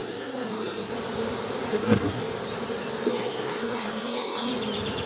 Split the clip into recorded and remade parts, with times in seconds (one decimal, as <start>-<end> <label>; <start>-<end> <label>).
0.0-0.9 remade; 0.9-1.7 recorded; 1.7-2.2 remade; 2.2-3.1 recorded; 3.1-4.5 remade; 4.5-5.1 recorded